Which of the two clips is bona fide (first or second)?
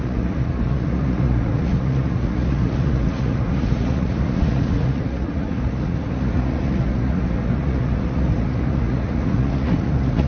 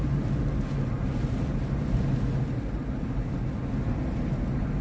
second